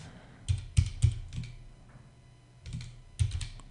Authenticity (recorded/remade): recorded